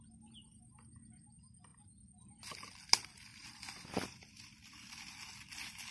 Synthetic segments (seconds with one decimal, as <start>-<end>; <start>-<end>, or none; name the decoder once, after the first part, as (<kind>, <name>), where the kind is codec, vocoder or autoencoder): 3.3-4.9 (vocoder, BigVGAN v2)